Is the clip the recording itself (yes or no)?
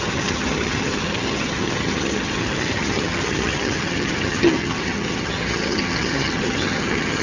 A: no